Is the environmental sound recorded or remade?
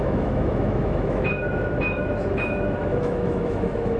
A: remade